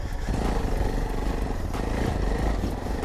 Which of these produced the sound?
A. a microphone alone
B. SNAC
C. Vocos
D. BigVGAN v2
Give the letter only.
A